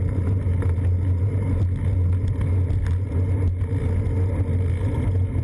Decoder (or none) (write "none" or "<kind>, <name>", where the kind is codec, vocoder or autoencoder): none